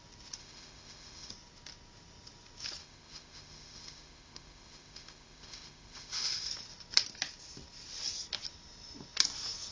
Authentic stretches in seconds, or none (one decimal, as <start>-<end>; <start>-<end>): 0.0-0.4; 1.3-2.8; 6.5-9.7